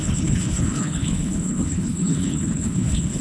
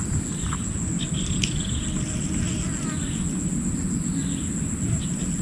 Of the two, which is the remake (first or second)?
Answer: first